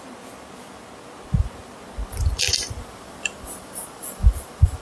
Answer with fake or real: fake